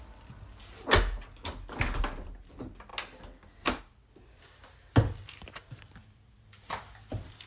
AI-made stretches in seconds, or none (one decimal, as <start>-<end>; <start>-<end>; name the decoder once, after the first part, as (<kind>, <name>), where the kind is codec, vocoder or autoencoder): none